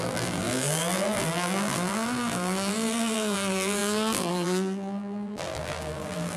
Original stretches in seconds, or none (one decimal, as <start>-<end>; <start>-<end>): none